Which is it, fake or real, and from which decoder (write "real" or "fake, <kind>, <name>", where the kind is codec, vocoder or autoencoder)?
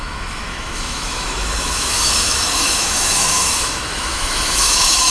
fake, autoencoder, DAC-VAE